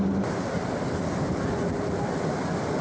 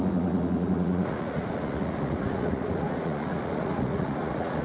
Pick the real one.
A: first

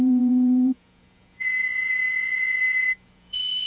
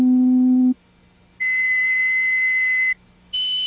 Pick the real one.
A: second